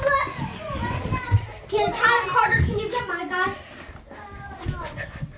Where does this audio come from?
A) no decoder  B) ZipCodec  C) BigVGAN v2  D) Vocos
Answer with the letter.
A